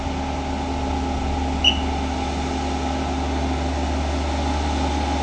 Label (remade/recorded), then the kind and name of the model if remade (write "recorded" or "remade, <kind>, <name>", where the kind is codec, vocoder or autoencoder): recorded